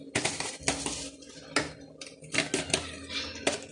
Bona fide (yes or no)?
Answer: yes